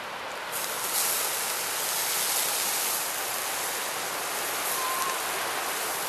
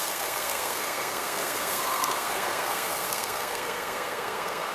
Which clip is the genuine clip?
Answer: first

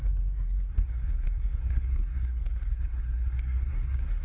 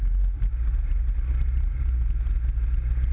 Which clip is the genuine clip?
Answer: second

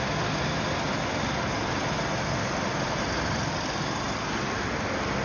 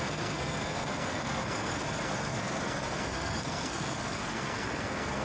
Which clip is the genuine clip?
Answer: first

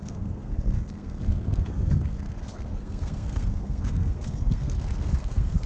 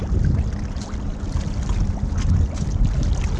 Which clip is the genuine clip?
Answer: second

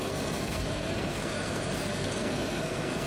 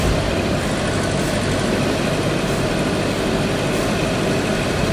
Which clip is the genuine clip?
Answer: second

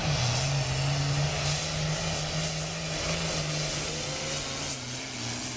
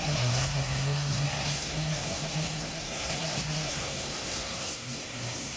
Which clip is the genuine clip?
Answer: first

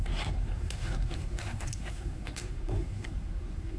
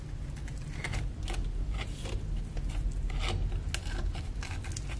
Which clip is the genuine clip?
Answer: second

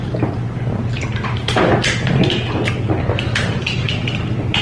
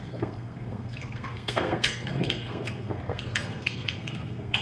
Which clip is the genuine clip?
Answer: first